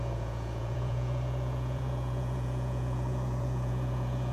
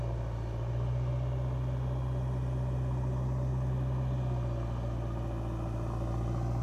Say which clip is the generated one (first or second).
first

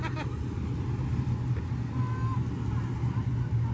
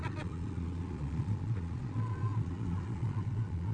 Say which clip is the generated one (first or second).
second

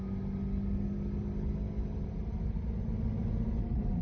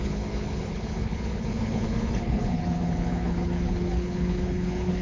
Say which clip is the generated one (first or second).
second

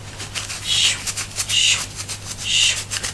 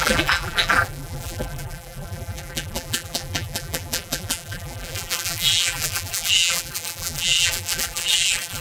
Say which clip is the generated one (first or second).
second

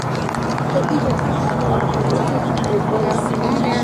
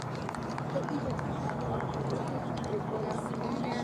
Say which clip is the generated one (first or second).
second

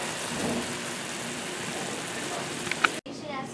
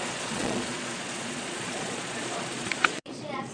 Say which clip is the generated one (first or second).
second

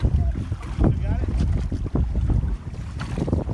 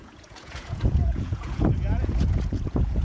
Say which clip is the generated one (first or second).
second